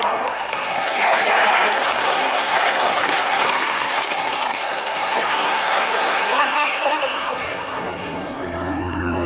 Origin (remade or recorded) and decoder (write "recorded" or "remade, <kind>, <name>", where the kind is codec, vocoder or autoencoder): remade, codec, SNAC